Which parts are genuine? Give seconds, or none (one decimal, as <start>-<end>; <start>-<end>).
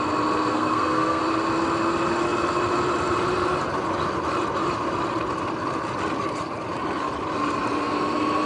0.0-0.5; 1.2-8.5